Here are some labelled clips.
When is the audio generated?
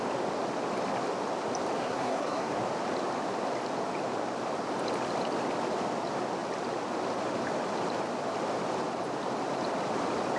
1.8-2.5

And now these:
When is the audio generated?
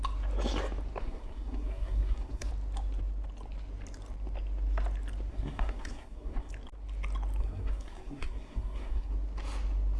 1.0-2.5; 5.3-6.5; 7.4-9.1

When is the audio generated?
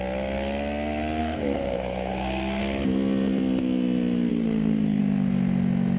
1.2-2.6; 4.3-5.0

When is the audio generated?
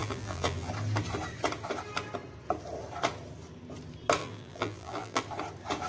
0.0-0.7; 4.2-5.2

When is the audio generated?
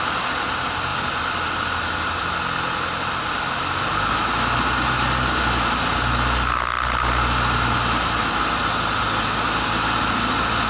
none